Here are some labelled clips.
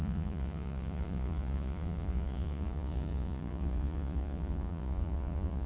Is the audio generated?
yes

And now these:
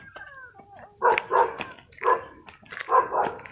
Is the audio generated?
no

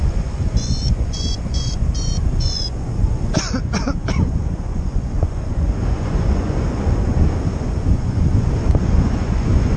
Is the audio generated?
yes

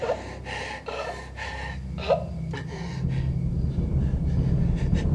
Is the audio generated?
no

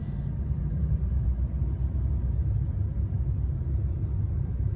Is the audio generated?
no